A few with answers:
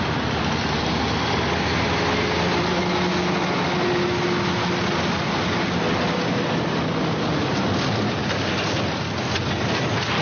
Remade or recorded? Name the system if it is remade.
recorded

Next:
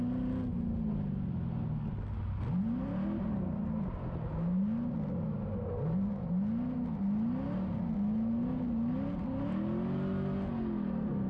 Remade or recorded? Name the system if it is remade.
recorded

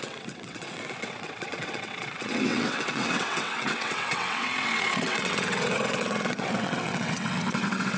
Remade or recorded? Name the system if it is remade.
remade, vocoder, WaveNeXt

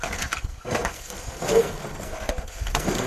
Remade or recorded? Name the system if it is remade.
remade, codec, SNAC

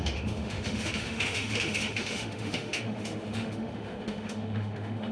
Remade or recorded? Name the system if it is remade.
remade, autoencoder, DAC-VAE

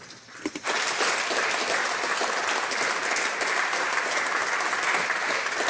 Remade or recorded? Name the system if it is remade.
recorded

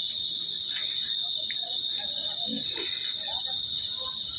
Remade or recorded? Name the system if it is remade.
recorded